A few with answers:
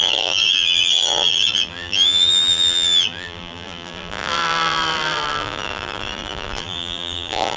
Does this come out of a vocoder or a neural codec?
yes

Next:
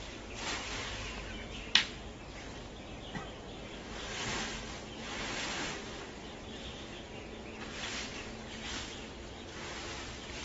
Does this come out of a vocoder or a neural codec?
no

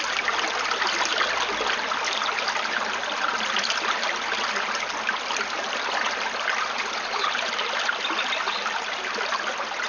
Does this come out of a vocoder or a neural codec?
no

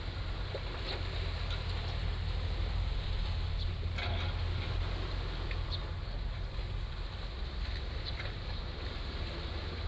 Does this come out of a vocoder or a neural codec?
no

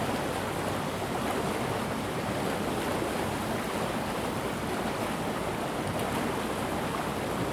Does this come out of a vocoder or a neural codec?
no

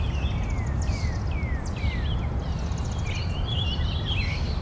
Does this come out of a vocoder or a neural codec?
no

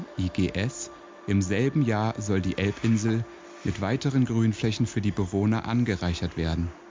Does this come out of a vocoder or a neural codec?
no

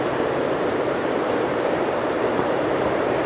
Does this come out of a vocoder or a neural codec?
yes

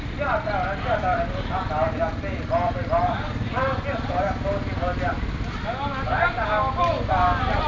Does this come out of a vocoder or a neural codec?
no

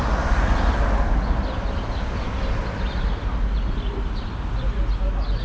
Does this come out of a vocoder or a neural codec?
no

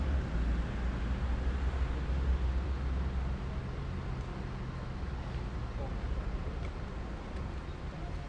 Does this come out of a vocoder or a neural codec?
no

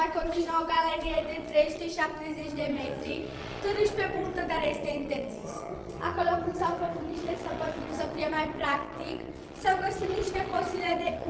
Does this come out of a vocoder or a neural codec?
yes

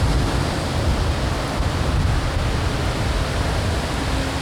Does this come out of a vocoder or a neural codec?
no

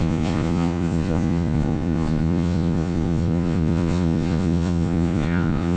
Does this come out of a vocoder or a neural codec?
yes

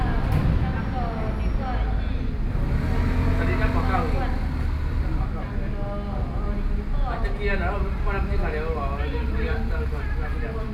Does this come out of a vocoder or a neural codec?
no